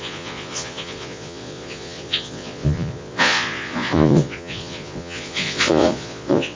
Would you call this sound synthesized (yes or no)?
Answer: yes